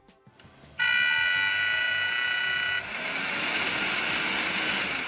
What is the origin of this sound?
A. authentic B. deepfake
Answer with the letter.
A